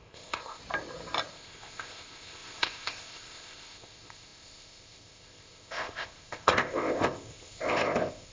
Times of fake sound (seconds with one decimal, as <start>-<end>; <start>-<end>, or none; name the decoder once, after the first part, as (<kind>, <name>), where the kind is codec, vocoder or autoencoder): 0.0-0.6 (codec, ZipCodec); 1.3-8.3